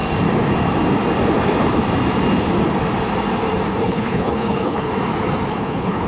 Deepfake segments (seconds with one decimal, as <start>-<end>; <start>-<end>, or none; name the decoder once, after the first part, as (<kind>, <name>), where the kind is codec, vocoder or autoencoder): 3.7-4.9 (codec, HILCodec); 5.5-6.1